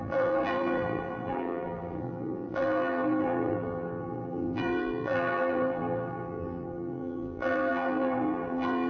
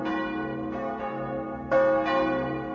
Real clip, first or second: second